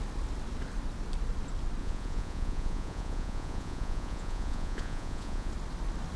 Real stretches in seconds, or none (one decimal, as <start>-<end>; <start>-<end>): 0.0-1.8; 5.5-6.2